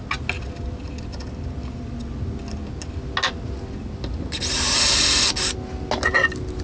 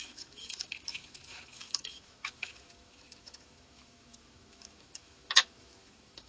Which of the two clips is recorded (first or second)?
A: first